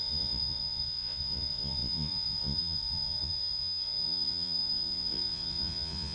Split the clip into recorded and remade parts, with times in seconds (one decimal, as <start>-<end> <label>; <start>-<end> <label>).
0.0-6.1 remade